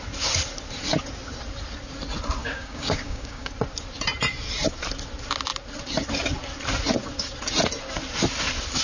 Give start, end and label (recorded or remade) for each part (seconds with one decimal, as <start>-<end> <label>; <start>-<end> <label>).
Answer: 0.0-2.4 recorded; 2.4-3.5 remade; 3.5-8.8 recorded